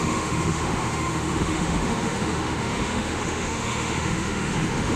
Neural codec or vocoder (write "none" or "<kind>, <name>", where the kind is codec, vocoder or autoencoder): autoencoder, DAC-VAE